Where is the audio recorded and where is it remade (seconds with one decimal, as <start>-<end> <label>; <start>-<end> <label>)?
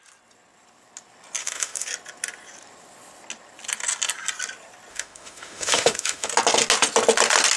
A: 0.0-1.4 recorded; 1.4-1.9 remade; 1.9-4.9 recorded; 4.9-6.3 remade; 6.3-7.6 recorded